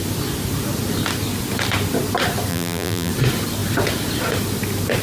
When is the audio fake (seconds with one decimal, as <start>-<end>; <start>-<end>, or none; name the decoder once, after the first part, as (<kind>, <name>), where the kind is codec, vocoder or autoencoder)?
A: 2.5-3.1 (vocoder, BigVGAN v2)